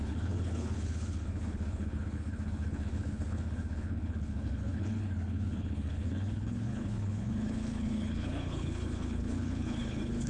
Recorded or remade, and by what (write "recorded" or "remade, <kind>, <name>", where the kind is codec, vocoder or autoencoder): remade, codec, HILCodec